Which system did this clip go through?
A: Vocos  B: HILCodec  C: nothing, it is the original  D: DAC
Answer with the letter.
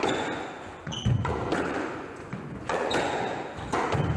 A